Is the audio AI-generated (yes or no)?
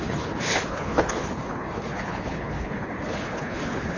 yes